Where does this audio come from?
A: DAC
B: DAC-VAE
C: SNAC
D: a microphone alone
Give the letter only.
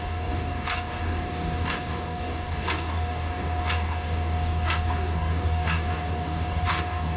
A